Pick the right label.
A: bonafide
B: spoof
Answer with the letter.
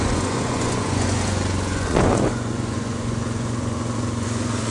B